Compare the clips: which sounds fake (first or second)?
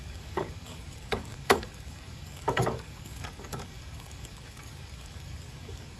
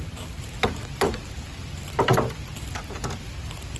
first